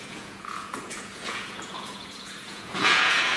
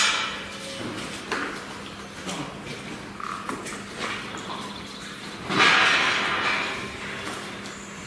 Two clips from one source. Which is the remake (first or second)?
first